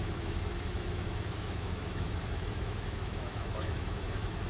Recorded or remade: remade